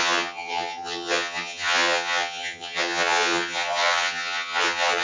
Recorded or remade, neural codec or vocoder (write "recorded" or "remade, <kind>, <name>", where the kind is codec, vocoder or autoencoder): remade, vocoder, HiFi-GAN